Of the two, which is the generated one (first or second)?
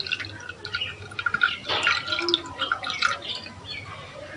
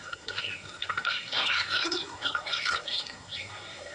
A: second